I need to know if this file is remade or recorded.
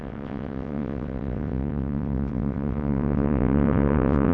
remade